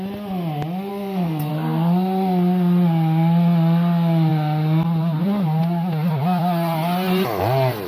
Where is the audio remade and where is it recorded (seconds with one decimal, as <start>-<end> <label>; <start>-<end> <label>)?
0.0-0.9 recorded; 0.9-1.5 remade; 1.5-7.9 recorded